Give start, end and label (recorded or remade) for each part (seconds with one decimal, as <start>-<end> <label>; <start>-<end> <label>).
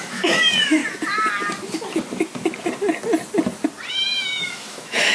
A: 0.0-0.8 remade; 0.8-3.9 recorded; 3.9-5.1 remade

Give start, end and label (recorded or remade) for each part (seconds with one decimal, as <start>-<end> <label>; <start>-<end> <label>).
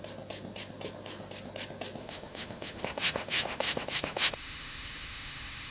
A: 0.0-2.0 recorded; 2.0-5.7 remade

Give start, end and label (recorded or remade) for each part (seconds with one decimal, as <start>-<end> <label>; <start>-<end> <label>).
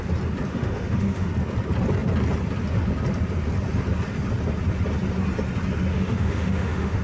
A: 0.0-0.5 recorded; 0.5-1.3 remade; 1.3-5.9 recorded; 5.9-7.0 remade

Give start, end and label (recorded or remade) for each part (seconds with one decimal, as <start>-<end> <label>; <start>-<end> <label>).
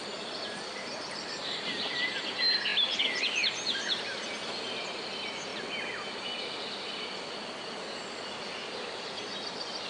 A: 0.0-9.9 recorded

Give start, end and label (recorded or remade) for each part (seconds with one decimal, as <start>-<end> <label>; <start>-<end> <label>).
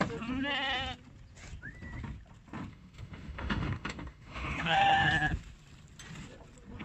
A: 0.0-2.7 recorded; 2.7-5.1 remade; 5.1-6.8 recorded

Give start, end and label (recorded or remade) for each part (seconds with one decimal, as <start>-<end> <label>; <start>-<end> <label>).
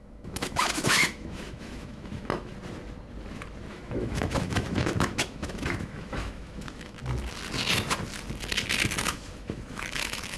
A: 0.0-2.5 remade; 2.5-3.7 recorded; 3.7-7.0 remade; 7.0-9.0 recorded; 9.0-10.4 remade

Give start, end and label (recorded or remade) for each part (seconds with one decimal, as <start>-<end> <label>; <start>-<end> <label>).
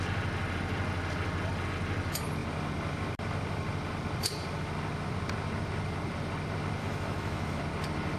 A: 0.0-6.8 recorded; 6.8-7.6 remade; 7.6-8.2 recorded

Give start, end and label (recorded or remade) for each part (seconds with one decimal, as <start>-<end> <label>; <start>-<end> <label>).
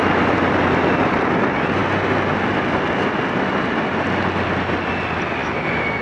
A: 0.0-5.4 recorded; 5.4-6.0 remade